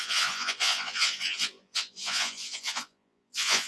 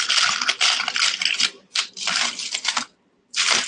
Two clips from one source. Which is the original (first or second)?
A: second